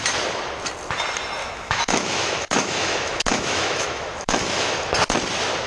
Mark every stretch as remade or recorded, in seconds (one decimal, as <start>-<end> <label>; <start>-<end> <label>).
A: 0.0-1.4 recorded; 1.4-4.8 remade; 4.8-5.7 recorded